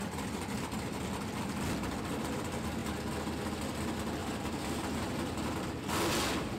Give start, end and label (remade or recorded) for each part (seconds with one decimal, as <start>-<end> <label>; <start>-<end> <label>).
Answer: 0.0-4.2 recorded; 4.2-5.1 remade; 5.1-6.6 recorded